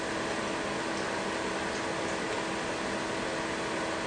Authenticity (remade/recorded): recorded